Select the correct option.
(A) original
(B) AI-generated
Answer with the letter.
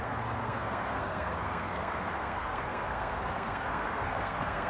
B